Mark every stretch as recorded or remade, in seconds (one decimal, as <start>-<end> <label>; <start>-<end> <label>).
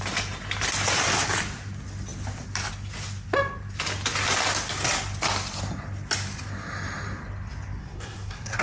0.0-7.8 recorded; 7.8-8.6 remade